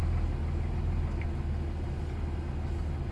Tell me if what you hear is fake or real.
real